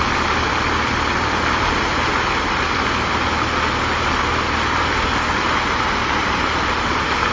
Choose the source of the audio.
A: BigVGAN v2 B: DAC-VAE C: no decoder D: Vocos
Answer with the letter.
C